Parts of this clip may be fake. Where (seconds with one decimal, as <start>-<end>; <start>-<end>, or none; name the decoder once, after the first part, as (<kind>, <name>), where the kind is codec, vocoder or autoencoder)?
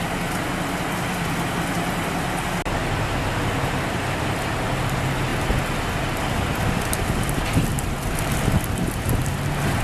none